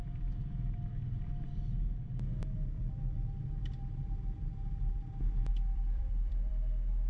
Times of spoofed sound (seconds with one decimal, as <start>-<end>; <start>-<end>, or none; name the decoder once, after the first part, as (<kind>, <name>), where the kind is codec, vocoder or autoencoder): 5.5-6.5 (vocoder, BigVGAN v2)